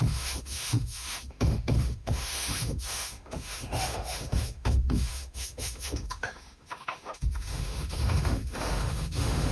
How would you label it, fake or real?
fake